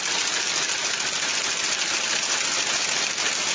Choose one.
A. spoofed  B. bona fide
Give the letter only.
B